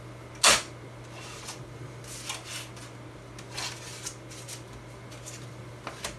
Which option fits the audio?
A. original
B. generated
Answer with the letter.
A